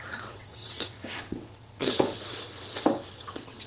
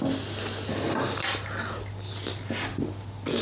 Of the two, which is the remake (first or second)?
first